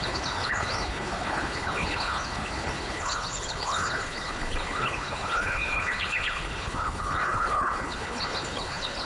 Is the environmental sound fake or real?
fake